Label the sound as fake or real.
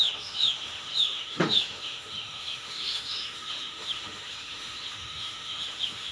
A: fake